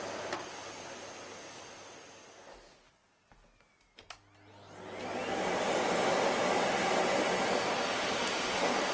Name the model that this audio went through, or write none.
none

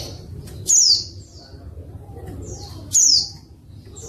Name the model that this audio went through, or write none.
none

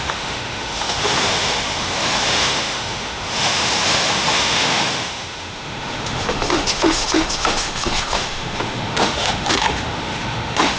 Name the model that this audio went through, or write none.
autoencoder, DAC-VAE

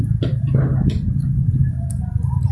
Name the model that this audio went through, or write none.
none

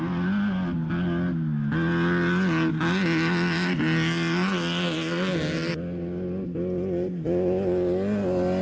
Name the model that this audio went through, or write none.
none